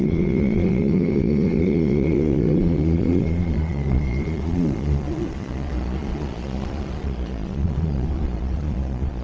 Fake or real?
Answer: fake